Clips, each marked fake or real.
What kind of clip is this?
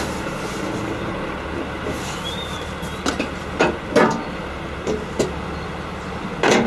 real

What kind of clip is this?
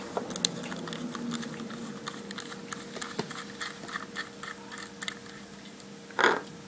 real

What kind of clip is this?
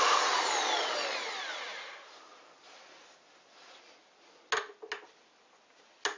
real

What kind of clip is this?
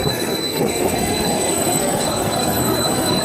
fake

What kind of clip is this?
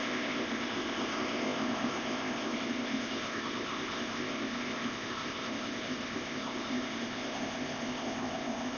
fake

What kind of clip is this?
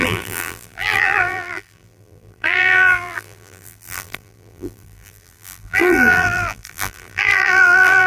fake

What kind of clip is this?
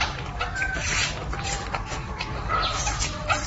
fake